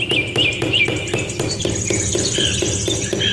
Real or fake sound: real